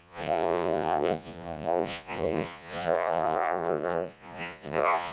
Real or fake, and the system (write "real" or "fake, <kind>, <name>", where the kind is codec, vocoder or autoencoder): fake, vocoder, Vocos